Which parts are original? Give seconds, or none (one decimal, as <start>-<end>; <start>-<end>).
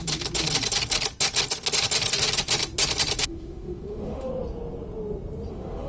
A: 0.0-3.2; 4.3-5.5